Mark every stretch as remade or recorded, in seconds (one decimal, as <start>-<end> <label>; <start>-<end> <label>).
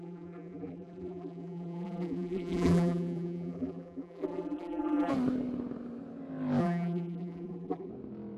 0.0-5.1 remade; 5.1-6.6 recorded; 6.6-7.9 remade; 7.9-8.4 recorded